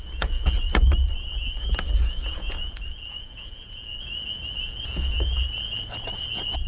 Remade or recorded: remade